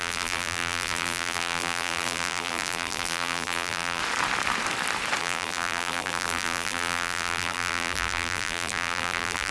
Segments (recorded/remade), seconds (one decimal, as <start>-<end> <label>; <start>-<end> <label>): 0.0-4.0 remade; 4.0-5.2 recorded; 5.2-9.5 remade